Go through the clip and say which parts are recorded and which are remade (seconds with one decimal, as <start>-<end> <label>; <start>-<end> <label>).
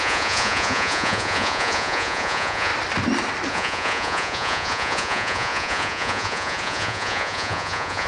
0.0-2.7 remade; 2.7-3.5 recorded; 3.5-8.1 remade